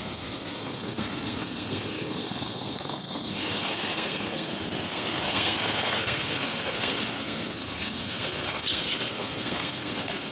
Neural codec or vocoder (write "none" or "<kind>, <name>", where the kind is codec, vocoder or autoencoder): codec, SNAC